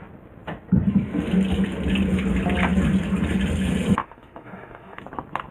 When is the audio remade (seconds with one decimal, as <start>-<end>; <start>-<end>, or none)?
4.0-5.0